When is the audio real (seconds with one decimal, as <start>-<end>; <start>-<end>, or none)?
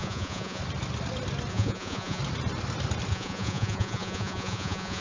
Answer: 0.6-1.5; 2.2-3.1